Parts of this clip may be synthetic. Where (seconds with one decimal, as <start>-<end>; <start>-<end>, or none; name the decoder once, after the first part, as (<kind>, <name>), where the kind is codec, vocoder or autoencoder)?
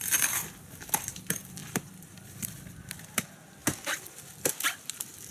1.6-3.0 (vocoder, BigVGAN v2)